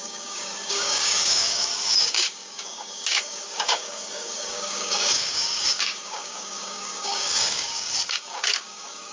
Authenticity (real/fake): fake